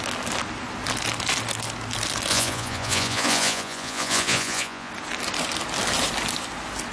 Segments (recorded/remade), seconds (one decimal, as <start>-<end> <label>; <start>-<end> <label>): 0.0-2.3 recorded; 2.3-4.9 remade; 4.9-6.9 recorded